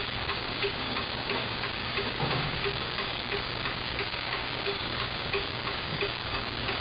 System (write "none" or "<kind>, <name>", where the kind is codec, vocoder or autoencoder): codec, DAC